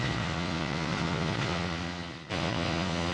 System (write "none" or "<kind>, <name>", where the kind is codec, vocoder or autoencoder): vocoder, Vocos